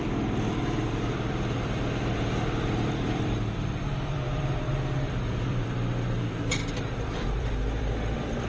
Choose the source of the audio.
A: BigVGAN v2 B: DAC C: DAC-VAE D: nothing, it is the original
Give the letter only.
A